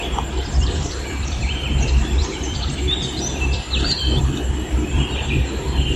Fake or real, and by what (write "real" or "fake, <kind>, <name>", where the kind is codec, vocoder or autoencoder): fake, vocoder, BigVGAN v2